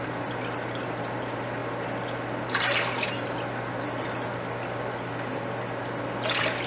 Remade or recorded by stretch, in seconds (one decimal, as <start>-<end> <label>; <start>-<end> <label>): 0.0-6.7 recorded